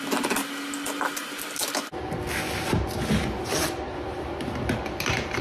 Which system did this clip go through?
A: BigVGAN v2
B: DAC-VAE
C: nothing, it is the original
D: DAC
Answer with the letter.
C